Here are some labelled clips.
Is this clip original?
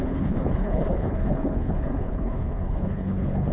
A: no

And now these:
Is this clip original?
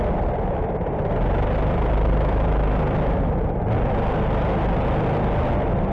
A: yes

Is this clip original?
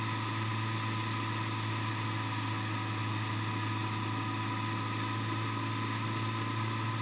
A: yes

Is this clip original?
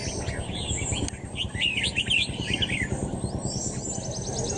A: yes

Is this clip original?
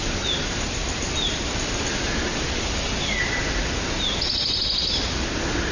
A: yes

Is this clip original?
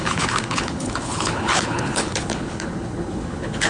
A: no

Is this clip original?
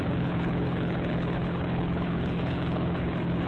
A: no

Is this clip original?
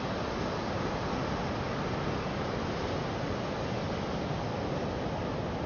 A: yes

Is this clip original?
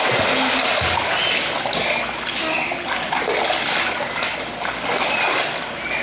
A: yes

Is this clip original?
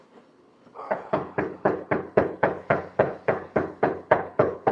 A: no